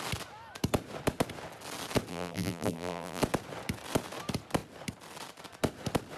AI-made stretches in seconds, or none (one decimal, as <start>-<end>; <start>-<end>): 2.1-3.2